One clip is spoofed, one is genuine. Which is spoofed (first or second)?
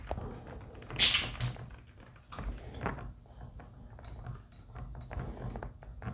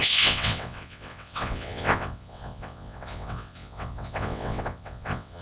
second